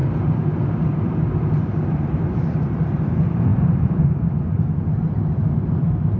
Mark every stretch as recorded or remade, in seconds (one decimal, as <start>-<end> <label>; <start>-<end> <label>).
0.0-6.2 remade